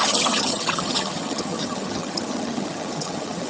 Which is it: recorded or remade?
remade